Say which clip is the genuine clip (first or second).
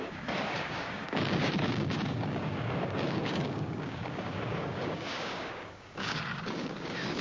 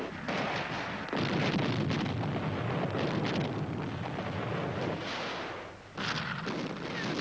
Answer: second